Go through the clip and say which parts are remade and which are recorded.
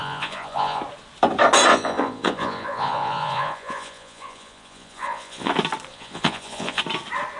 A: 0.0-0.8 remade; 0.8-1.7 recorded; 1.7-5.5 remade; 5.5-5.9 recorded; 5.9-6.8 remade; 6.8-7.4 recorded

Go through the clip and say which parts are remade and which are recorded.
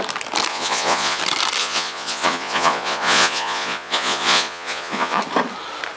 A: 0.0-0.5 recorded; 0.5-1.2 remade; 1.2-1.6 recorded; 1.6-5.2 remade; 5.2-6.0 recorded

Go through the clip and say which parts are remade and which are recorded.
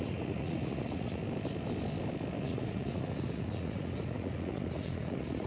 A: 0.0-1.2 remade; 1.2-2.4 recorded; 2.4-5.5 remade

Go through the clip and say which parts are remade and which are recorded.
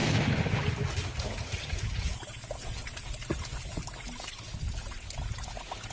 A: 0.0-1.2 recorded; 1.2-2.8 remade; 2.8-5.5 recorded; 5.5-5.9 remade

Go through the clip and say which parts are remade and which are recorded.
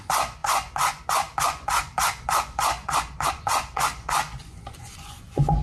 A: 0.0-5.6 remade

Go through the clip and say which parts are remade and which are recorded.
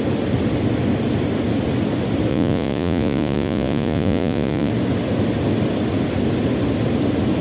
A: 0.0-2.3 recorded; 2.3-4.7 remade; 4.7-7.4 recorded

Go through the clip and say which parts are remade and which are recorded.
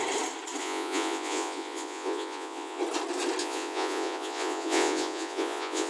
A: 0.0-0.6 recorded; 0.6-2.8 remade; 2.8-3.4 recorded; 3.4-5.9 remade